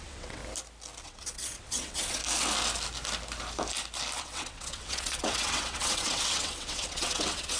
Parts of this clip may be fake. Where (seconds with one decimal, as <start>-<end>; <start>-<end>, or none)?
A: 0.0-0.4; 1.0-2.2; 4.2-7.6